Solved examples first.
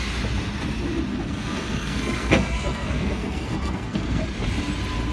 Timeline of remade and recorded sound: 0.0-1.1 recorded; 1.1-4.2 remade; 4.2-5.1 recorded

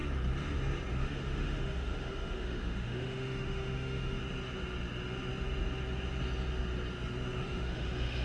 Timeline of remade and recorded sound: 0.0-0.9 recorded; 0.9-4.2 remade; 4.2-7.4 recorded; 7.4-8.2 remade

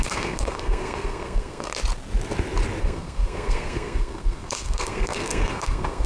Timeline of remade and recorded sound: 0.0-1.7 remade; 1.7-2.8 recorded; 2.8-6.1 remade